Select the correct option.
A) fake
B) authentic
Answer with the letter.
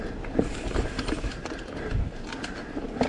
B